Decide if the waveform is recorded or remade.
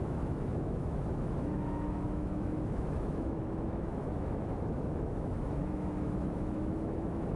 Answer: remade